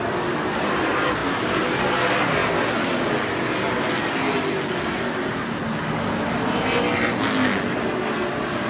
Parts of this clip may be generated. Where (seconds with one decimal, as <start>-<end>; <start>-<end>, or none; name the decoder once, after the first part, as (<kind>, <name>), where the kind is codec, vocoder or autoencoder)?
none